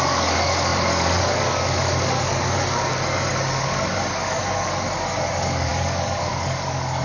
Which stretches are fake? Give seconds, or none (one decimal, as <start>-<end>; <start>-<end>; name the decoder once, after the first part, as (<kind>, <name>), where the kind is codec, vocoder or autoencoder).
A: 0.0-7.0 (codec, DAC)